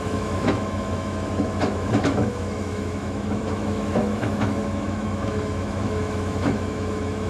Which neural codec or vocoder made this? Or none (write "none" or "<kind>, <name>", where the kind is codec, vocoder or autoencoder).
autoencoder, DAC-VAE